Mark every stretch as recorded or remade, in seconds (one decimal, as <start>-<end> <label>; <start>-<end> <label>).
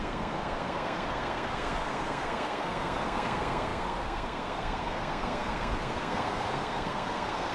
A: 0.0-7.5 remade